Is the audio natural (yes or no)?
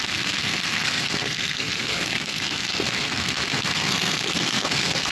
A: no